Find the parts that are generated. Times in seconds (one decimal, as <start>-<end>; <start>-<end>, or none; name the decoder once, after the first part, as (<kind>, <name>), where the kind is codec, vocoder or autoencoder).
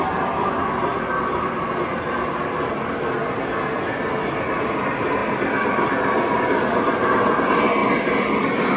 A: none